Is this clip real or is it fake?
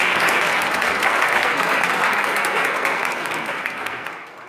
fake